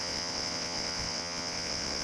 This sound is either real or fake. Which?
fake